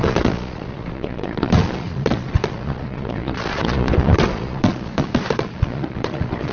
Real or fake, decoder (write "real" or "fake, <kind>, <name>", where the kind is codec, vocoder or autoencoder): fake, vocoder, Vocos